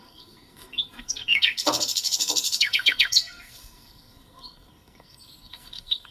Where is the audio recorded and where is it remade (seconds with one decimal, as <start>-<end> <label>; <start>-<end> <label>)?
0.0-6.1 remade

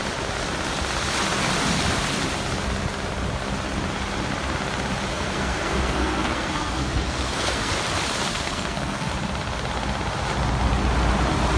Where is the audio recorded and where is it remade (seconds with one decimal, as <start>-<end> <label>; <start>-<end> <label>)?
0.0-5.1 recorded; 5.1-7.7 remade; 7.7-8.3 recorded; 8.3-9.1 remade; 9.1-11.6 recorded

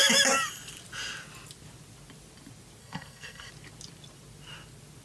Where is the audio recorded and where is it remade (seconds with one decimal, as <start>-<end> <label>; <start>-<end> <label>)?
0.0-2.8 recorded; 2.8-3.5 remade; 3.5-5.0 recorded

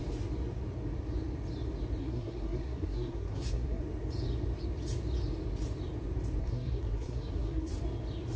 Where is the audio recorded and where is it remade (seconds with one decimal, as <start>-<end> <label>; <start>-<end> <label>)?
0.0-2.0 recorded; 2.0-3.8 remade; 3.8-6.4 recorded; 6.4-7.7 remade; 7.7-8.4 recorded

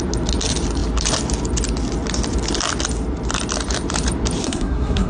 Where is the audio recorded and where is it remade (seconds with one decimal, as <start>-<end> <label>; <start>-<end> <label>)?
0.0-4.4 recorded; 4.4-5.1 remade

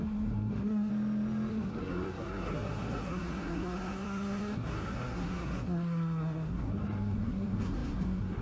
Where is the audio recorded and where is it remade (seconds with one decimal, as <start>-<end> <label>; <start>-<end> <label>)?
0.0-0.9 remade; 0.9-1.5 recorded; 1.5-8.4 remade